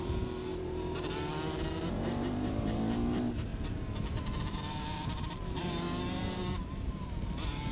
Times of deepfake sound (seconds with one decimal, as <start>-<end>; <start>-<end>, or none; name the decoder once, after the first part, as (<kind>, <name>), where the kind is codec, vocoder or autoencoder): 0.0-7.7 (vocoder, BigVGAN v2)